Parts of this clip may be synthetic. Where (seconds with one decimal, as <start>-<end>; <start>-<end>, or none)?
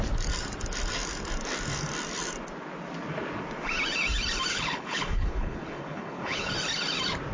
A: 4.5-6.5